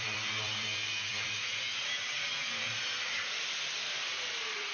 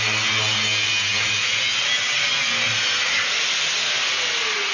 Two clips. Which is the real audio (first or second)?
second